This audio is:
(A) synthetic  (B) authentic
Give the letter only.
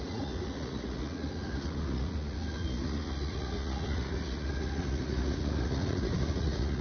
A